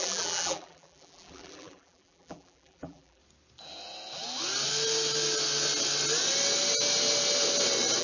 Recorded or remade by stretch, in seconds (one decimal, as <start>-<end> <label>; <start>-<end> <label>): 0.0-3.2 remade; 3.2-8.0 recorded